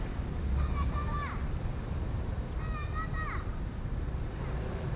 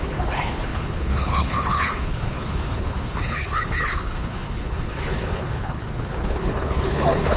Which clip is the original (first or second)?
first